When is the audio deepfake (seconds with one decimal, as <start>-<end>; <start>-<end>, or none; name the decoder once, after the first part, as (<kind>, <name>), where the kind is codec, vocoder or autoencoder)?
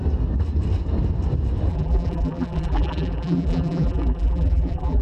1.7-5.0 (vocoder, BigVGAN v2)